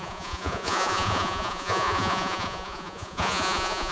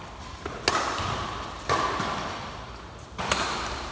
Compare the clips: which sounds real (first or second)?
second